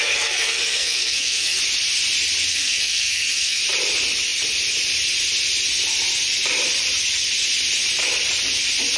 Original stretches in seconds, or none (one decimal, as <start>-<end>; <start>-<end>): 1.6-2.5; 3.6-9.0